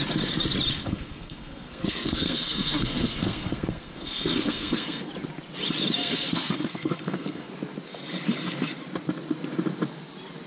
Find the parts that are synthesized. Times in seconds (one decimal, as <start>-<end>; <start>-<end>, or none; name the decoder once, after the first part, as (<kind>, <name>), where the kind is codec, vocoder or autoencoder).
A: 0.8-5.1 (codec, SNAC); 6.0-7.5